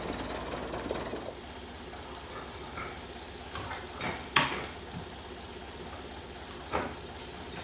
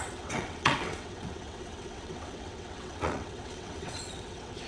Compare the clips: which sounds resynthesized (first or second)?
second